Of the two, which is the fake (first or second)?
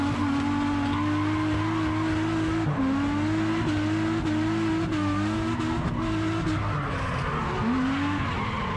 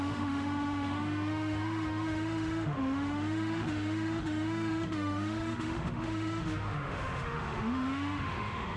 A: second